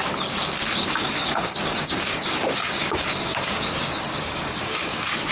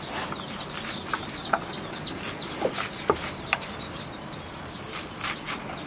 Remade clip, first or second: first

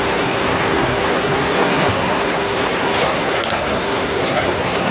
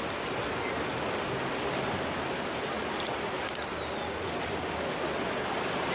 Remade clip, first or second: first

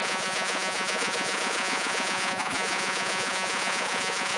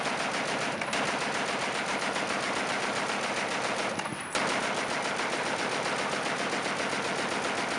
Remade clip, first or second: first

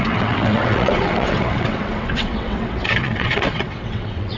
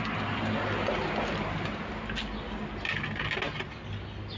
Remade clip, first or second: first